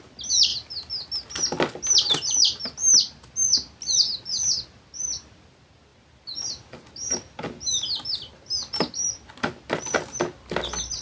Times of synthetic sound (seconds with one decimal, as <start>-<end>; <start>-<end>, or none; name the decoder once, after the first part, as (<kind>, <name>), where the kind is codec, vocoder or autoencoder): none

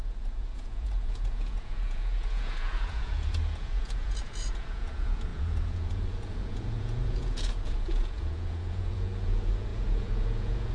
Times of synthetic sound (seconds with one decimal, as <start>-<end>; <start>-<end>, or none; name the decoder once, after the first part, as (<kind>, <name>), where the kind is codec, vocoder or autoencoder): 0.0-10.7 (vocoder, Vocos)

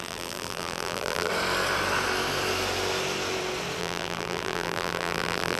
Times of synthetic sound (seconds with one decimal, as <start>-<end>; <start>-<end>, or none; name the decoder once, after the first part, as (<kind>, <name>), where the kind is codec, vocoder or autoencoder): 0.0-1.3 (vocoder, BigVGAN v2); 3.8-5.6

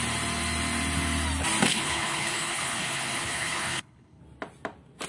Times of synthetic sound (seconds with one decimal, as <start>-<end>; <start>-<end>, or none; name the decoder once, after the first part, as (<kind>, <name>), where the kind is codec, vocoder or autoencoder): 1.7-4.2 (codec, HILCodec)

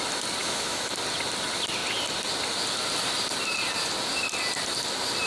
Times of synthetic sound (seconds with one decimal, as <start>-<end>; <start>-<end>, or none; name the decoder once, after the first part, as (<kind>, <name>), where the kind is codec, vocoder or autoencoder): 0.4-0.9 (autoencoder, DAC-VAE)

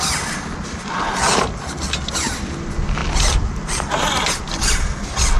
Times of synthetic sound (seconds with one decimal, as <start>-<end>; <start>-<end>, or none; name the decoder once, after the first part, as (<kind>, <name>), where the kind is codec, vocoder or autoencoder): none